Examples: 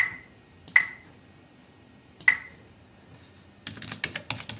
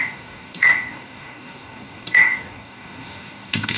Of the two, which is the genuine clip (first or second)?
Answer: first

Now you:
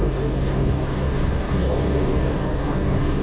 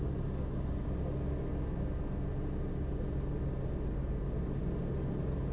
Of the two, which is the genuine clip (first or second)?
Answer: second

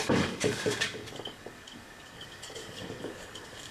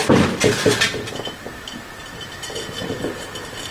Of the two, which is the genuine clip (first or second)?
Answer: second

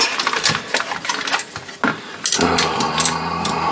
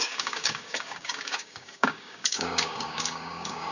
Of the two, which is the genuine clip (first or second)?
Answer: first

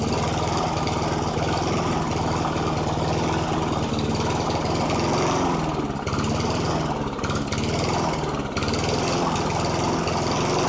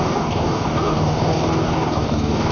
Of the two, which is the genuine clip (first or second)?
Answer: first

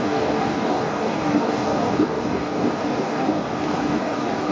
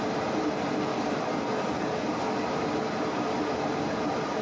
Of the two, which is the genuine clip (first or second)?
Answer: second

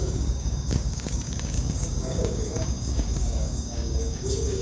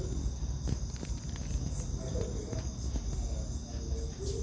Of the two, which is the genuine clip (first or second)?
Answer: second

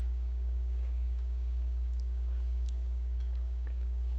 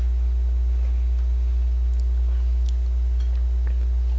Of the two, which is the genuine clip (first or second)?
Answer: second